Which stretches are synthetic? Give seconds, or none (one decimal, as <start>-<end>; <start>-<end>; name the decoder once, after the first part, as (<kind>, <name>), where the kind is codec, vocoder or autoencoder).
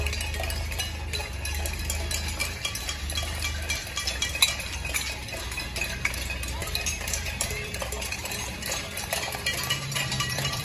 2.4-3.0 (vocoder, BigVGAN v2); 6.6-10.6